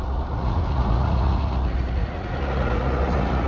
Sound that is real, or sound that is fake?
fake